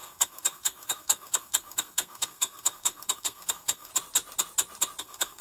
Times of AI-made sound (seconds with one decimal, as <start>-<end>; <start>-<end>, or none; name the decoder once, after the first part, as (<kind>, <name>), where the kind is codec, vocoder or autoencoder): 0.0-3.9 (codec, SNAC); 5.0-5.4